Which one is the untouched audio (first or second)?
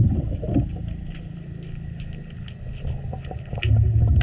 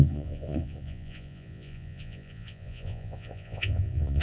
first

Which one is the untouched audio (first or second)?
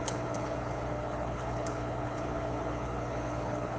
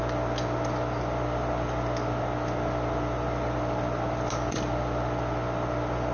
second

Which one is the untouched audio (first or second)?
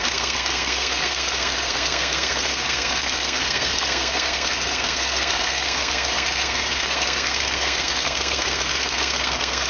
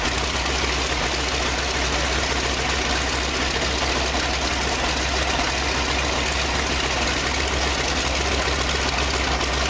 second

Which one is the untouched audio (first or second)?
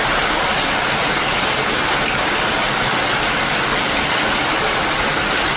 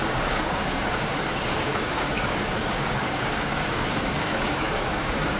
first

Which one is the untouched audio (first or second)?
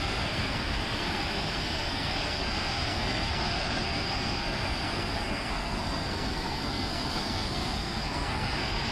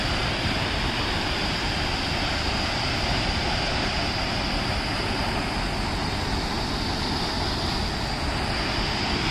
second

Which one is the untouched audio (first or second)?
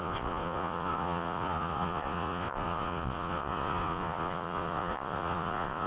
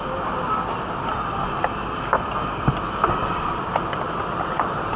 second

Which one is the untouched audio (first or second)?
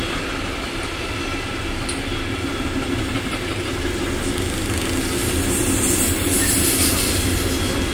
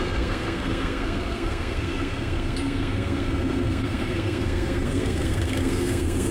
first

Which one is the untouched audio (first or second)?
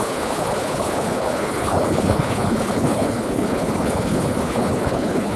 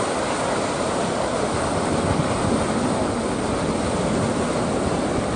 second